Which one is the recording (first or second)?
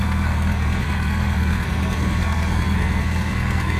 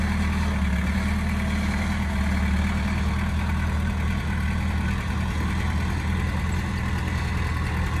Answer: second